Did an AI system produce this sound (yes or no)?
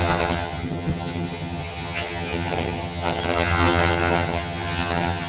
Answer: yes